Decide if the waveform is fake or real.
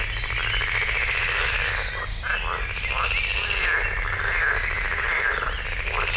real